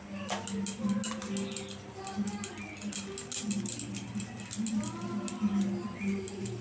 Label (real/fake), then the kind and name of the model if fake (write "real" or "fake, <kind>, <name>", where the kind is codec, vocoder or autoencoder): real